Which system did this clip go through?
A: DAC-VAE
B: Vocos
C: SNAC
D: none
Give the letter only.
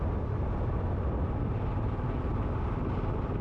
D